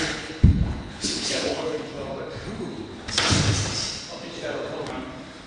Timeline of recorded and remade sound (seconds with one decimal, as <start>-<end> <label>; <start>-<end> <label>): 0.0-2.1 remade; 2.1-5.5 recorded